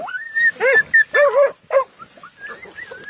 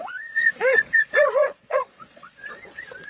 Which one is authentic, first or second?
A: first